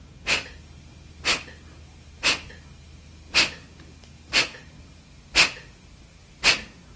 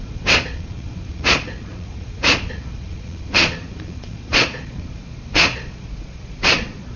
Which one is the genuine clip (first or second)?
first